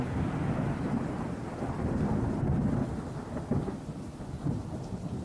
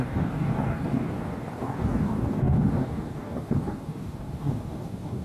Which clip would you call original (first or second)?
first